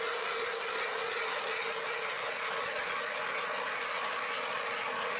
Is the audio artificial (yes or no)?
no